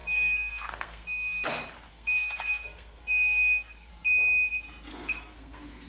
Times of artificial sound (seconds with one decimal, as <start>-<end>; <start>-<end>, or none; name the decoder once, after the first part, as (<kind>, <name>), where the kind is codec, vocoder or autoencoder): 0.0-1.5 (codec, SNAC); 1.9-3.9; 4.9-5.9